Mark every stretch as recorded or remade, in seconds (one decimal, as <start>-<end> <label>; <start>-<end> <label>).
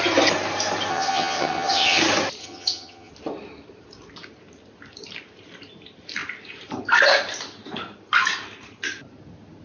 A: 0.0-0.9 recorded; 0.9-2.0 remade; 2.0-2.4 recorded; 2.4-3.1 remade; 3.1-9.6 recorded